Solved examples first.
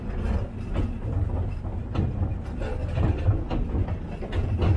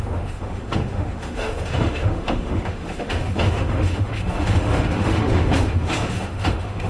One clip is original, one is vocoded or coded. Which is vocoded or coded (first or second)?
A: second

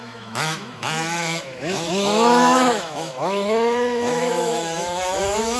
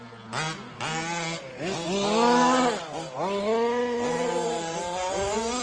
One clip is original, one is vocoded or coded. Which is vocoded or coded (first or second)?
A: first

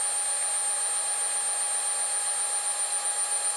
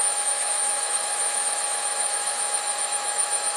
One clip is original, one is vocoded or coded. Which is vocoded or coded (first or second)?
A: second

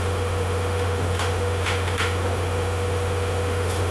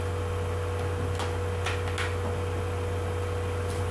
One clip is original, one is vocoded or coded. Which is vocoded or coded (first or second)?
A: first